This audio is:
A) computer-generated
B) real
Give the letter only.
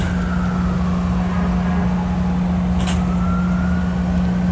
B